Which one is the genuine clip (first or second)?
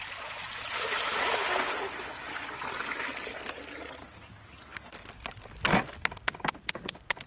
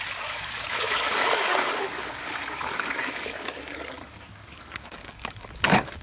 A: first